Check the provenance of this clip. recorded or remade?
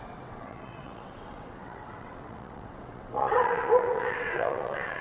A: remade